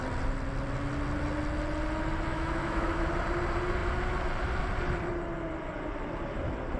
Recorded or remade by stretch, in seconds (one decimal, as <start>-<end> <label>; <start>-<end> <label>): 0.0-2.3 recorded; 2.3-3.1 remade; 3.1-6.8 recorded